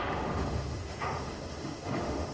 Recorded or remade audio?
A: remade